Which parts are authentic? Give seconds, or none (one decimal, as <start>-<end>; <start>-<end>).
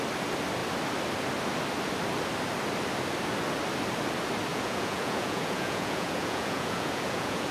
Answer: 0.0-4.5